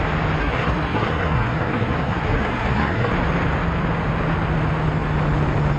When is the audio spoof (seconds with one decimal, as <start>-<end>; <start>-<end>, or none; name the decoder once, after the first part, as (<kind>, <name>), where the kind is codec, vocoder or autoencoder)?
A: 0.4-3.1 (codec, SNAC)